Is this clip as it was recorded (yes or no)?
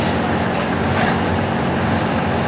yes